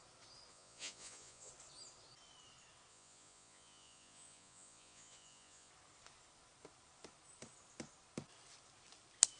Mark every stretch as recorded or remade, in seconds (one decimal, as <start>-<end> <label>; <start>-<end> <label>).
0.0-0.5 recorded; 0.5-1.5 remade; 1.5-2.9 recorded; 2.9-5.7 remade; 5.7-9.4 recorded